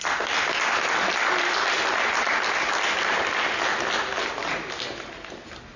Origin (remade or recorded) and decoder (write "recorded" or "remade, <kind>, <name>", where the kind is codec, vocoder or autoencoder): recorded